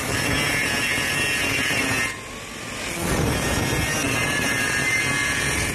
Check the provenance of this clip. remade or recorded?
recorded